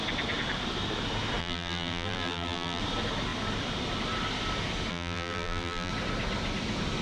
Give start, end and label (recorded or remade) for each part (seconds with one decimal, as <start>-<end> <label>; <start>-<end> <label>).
0.0-1.4 recorded; 1.4-2.8 remade; 2.8-4.9 recorded; 4.9-5.9 remade; 5.9-7.0 recorded